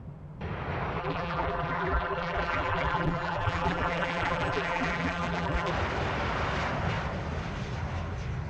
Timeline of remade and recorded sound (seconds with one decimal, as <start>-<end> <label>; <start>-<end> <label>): 0.0-1.0 recorded; 1.0-5.7 remade; 5.7-8.5 recorded